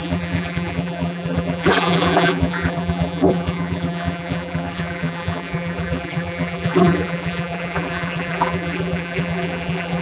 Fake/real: fake